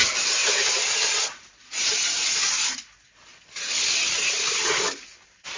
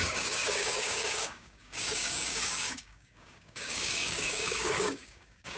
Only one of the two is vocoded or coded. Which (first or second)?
second